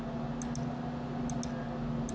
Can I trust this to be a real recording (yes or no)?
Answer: yes